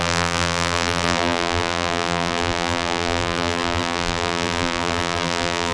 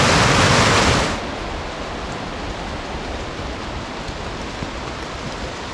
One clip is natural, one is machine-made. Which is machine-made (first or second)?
first